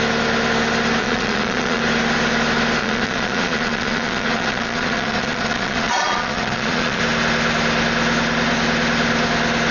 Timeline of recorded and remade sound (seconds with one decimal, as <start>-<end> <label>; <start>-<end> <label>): 0.0-1.0 recorded; 1.0-1.8 remade; 1.8-2.8 recorded; 2.8-7.0 remade; 7.0-9.7 recorded